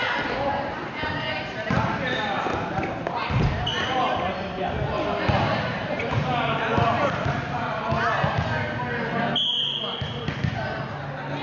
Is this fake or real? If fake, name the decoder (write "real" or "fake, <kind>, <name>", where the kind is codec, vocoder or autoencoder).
real